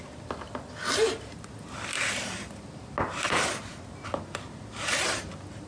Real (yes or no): yes